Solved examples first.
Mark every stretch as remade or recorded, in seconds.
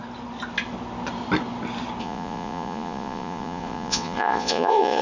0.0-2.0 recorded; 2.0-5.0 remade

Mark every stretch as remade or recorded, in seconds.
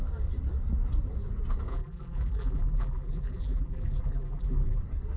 0.0-1.7 recorded; 1.7-4.8 remade; 4.8-5.2 recorded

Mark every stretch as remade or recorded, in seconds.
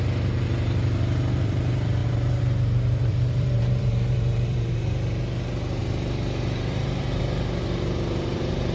0.0-8.7 remade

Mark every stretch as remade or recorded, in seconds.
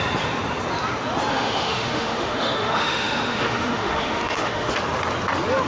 0.0-1.3 recorded; 1.3-4.7 remade; 4.7-5.7 recorded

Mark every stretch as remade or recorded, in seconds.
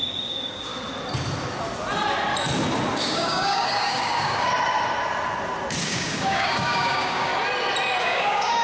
0.0-0.7 remade; 0.7-3.0 recorded; 3.0-4.5 remade; 4.5-5.8 recorded; 5.8-7.3 remade; 7.3-8.0 recorded; 8.0-8.6 remade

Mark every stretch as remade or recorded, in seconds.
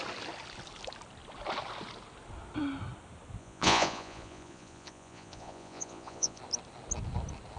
0.0-3.4 recorded; 3.4-6.4 remade; 6.4-7.6 recorded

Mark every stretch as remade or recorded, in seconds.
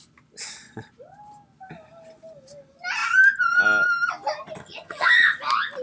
0.0-4.6 recorded; 4.6-5.1 remade; 5.1-5.8 recorded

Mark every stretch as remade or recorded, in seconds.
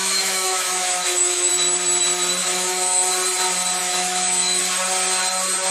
0.0-1.5 remade; 1.5-2.4 recorded; 2.4-3.1 remade; 3.1-3.8 recorded; 3.8-4.6 remade; 4.6-5.7 recorded